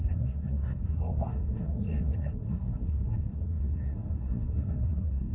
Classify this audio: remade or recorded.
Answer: remade